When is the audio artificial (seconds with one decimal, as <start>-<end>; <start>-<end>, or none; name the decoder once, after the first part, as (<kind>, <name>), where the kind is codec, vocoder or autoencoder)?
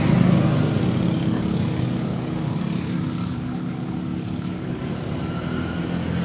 1.2-4.9 (codec, DAC)